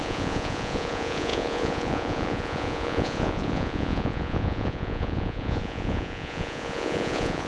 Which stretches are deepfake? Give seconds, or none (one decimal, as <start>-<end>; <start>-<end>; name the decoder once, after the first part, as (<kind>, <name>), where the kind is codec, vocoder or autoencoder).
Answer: 0.0-7.5 (vocoder, Vocos)